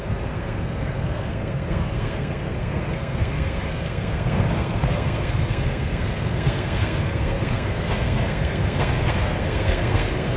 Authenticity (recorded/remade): remade